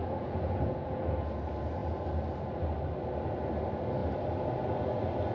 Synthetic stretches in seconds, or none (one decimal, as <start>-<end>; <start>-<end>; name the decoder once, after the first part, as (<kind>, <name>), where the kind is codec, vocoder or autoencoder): 0.0-1.0 (vocoder, Vocos)